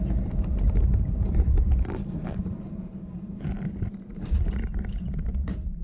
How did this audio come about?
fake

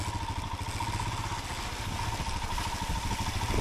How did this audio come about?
real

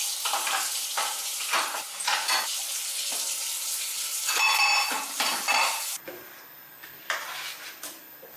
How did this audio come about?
real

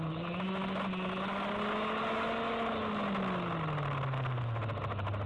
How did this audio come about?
real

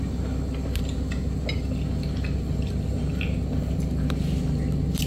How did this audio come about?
real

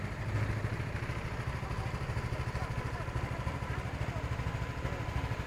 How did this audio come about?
real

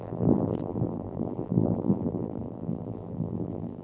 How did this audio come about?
fake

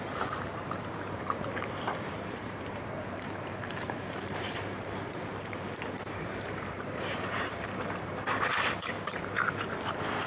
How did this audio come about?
fake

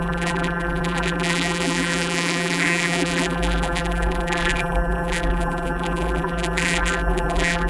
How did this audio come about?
fake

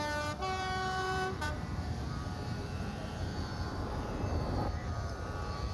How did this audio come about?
fake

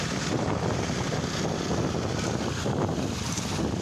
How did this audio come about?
real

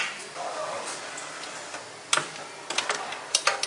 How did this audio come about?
real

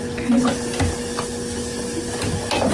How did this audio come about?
real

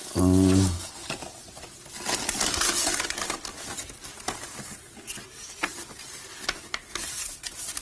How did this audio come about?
real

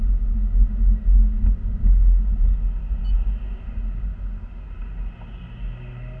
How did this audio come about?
real